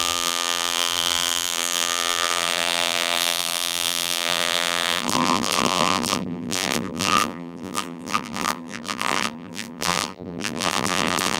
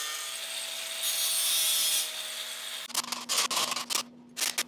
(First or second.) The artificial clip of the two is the first